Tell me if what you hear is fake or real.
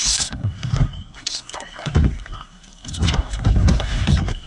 fake